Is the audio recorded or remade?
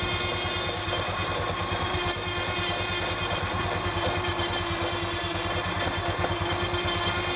recorded